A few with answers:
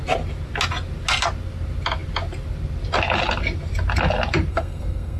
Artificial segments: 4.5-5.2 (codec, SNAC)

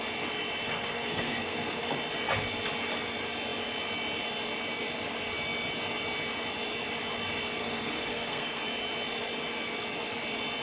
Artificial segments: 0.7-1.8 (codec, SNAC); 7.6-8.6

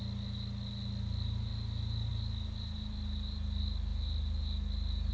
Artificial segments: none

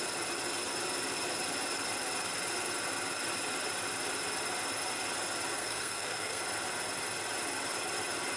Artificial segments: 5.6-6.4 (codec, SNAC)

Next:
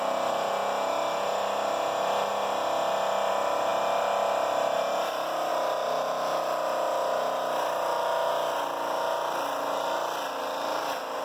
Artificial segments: none